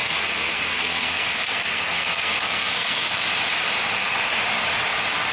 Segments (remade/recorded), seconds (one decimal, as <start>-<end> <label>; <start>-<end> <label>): 0.0-3.2 remade; 3.2-5.3 recorded